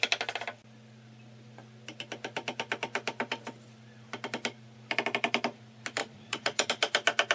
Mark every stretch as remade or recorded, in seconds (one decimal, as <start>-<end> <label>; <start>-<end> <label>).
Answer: 0.0-6.0 recorded; 6.0-6.7 remade; 6.7-7.3 recorded